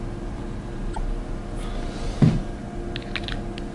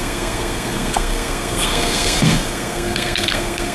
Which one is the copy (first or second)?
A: second